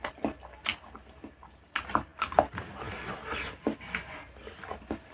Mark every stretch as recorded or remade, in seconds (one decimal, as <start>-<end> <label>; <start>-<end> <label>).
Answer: 0.0-5.1 recorded